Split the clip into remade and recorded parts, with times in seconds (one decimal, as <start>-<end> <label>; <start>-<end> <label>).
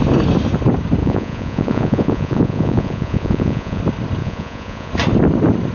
0.0-1.0 recorded; 1.0-3.8 remade; 3.8-4.2 recorded; 4.2-4.9 remade; 4.9-5.7 recorded